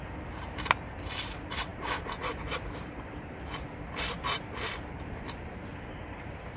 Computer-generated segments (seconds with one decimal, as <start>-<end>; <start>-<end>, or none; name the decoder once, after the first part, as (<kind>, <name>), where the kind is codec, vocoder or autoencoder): 0.0-6.6 (vocoder, BigVGAN v2)